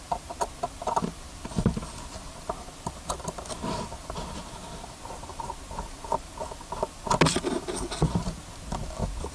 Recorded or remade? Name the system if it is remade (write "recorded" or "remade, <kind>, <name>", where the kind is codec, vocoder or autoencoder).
recorded